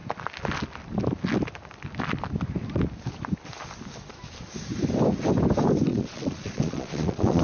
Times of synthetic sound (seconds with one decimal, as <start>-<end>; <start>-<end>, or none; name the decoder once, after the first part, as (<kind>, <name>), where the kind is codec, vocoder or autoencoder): 5.9-7.4 (vocoder, Vocos)